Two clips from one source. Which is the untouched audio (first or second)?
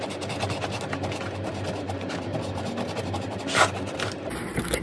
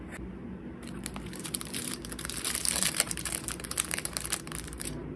first